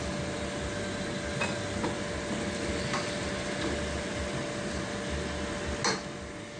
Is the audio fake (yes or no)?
no